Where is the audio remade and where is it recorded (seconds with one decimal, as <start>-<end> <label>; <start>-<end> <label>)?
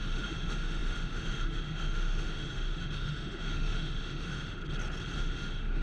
0.0-4.6 remade; 4.6-5.2 recorded; 5.2-5.8 remade